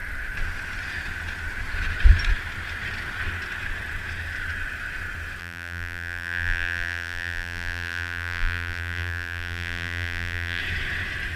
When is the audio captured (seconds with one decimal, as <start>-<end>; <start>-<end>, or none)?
0.0-5.4; 10.6-11.4